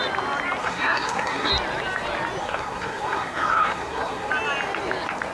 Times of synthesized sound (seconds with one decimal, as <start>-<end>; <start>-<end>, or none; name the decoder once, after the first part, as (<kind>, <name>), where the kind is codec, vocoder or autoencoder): 0.6-1.5 (codec, SNAC); 2.4-4.3